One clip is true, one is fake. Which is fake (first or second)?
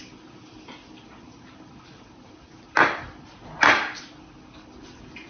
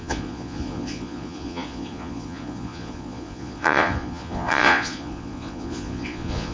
second